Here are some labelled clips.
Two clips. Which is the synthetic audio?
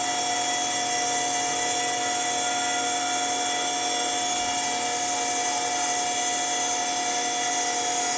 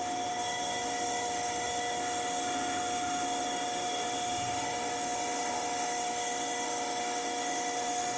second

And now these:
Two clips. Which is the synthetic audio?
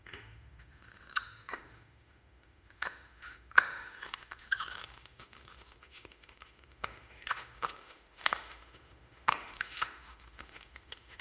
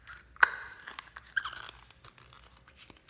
first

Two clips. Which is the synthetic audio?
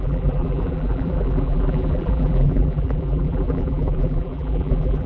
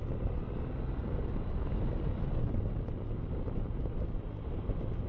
first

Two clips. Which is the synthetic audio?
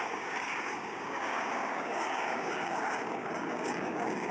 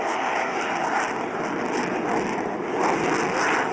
first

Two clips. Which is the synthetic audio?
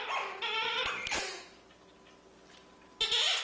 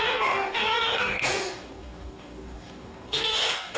second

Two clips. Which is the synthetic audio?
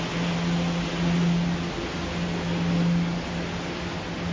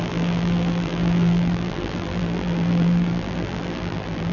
second